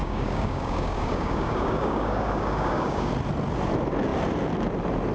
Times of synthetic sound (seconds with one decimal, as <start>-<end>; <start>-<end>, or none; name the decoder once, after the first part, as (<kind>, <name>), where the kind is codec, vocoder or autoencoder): 0.0-3.1 (codec, DAC)